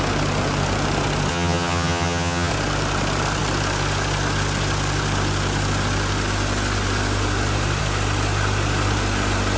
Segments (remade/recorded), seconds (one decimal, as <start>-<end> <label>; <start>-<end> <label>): 0.0-1.3 recorded; 1.3-2.5 remade; 2.5-9.6 recorded